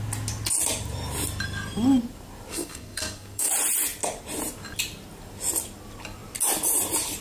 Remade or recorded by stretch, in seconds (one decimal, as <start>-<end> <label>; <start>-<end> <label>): 0.0-2.5 recorded; 2.5-3.5 remade; 3.5-7.2 recorded